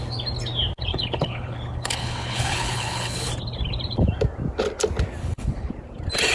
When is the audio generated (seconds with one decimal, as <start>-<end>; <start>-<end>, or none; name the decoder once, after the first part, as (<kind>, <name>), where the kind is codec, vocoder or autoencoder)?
0.9-3.3 (codec, HILCodec); 5.2-5.7